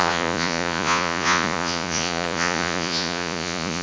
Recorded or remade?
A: remade